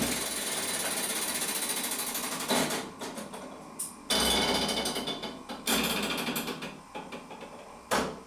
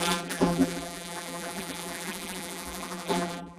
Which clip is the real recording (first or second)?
first